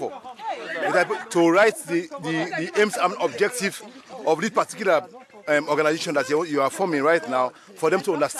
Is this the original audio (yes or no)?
yes